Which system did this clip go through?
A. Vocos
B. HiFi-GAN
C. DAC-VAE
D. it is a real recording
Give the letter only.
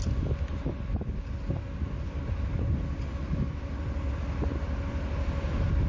D